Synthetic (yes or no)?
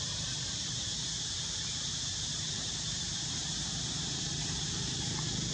yes